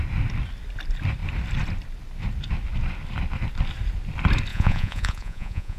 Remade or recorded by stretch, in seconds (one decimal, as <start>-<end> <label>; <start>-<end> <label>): 0.0-4.5 recorded; 4.5-5.8 remade